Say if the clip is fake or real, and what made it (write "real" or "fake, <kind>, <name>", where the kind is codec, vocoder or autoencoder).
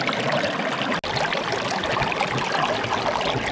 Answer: real